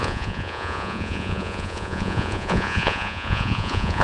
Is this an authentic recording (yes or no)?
no